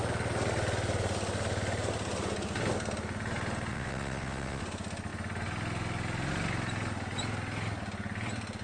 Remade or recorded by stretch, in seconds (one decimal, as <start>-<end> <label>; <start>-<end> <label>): 0.0-3.7 recorded; 3.7-4.6 remade; 4.6-8.6 recorded